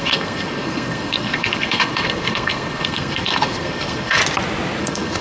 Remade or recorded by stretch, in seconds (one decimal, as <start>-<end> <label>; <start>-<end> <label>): 0.0-4.2 remade; 4.2-4.8 recorded; 4.8-5.2 remade